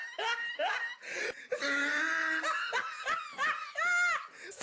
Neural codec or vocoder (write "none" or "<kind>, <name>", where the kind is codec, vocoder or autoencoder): none